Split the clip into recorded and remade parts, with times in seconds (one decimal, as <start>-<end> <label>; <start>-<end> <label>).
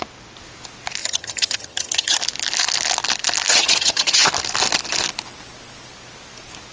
0.0-1.0 recorded; 1.0-2.2 remade; 2.2-3.5 recorded; 3.5-4.3 remade; 4.3-6.7 recorded